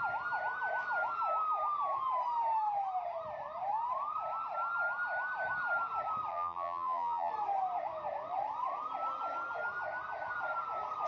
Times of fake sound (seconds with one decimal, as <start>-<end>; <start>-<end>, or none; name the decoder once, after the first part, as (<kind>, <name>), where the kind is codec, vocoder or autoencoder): 6.3-7.3 (vocoder, BigVGAN v2)